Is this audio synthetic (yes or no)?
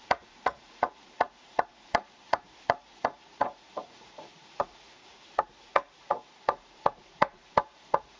yes